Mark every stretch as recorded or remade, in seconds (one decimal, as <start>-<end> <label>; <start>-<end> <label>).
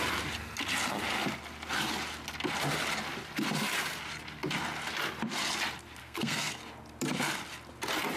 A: 0.0-6.0 recorded; 6.0-6.5 remade; 6.5-8.2 recorded